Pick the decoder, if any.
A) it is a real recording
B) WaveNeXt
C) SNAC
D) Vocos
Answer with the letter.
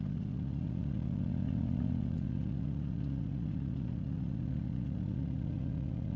D